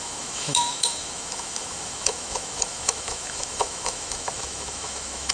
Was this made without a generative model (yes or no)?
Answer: no